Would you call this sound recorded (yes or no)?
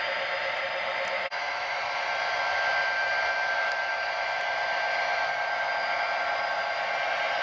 yes